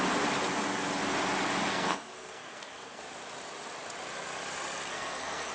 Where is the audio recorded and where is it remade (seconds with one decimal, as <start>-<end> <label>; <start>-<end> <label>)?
0.0-1.7 recorded; 1.7-3.0 remade; 3.0-4.9 recorded; 4.9-5.5 remade